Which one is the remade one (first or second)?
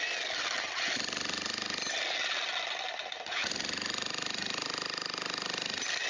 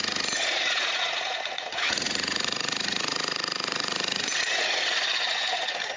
second